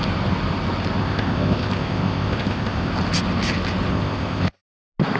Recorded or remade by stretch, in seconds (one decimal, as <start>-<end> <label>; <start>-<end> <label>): 0.0-1.0 recorded; 1.0-2.9 remade; 2.9-3.9 recorded; 3.9-4.6 remade; 4.6-5.2 recorded